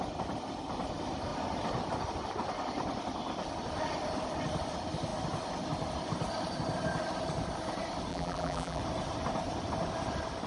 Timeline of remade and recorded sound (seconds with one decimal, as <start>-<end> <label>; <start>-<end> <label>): 0.0-8.1 recorded; 8.1-8.8 remade; 8.8-10.5 recorded